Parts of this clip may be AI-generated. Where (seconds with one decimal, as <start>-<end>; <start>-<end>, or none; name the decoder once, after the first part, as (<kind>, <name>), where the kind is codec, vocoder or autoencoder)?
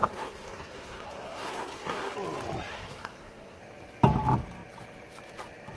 0.0-2.1 (codec, SNAC); 2.7-3.6